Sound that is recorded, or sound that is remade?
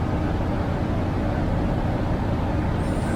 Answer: recorded